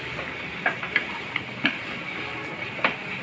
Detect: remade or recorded remade